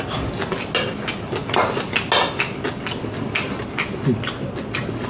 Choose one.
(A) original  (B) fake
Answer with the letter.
A